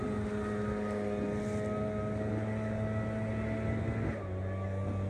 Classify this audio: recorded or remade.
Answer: recorded